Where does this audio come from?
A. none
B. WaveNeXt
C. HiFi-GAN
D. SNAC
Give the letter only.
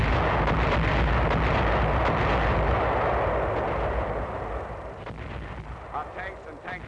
A